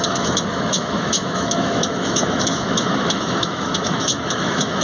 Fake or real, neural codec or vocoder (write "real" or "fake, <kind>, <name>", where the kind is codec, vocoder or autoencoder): fake, autoencoder, DAC-VAE